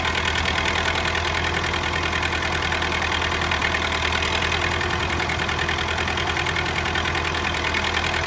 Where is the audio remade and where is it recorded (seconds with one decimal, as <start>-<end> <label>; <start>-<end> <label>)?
0.0-8.3 recorded